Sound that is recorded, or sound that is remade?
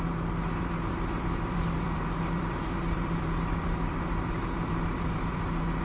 remade